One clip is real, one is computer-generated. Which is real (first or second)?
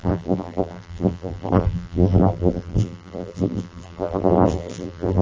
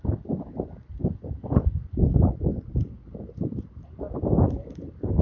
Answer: second